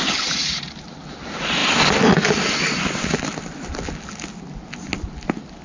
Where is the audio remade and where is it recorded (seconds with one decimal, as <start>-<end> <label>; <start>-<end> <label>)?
0.0-5.6 recorded